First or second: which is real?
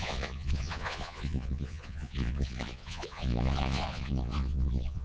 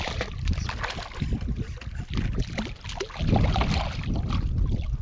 second